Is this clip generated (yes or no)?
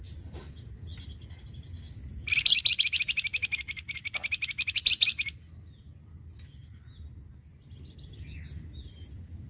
no